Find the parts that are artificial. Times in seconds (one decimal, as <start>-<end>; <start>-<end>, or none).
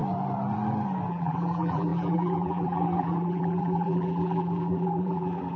1.1-5.6